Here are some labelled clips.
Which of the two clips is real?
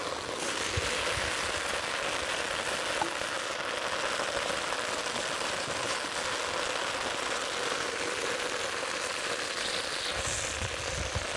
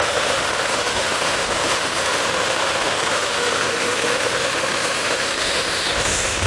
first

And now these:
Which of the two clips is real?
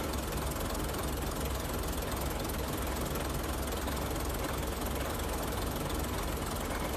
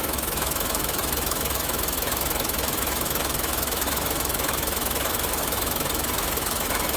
first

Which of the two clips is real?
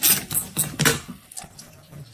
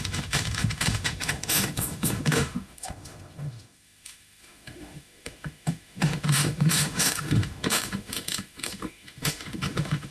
first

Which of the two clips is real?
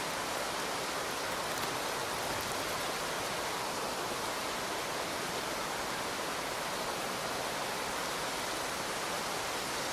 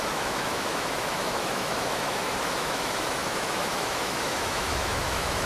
first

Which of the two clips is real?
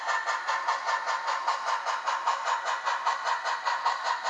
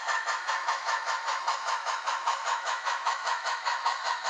first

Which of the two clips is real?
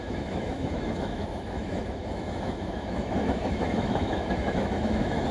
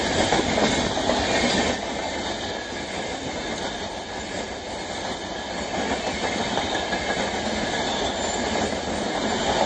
second